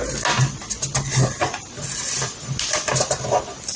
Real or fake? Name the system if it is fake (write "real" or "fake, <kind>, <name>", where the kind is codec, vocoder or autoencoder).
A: real